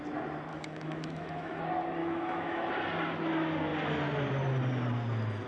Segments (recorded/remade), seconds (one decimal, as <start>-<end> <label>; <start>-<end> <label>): 0.0-0.5 recorded; 0.5-1.6 remade; 1.6-2.0 recorded; 2.0-2.7 remade; 2.7-5.5 recorded